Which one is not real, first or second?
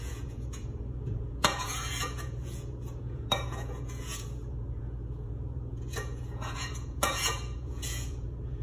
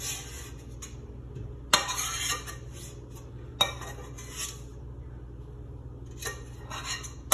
first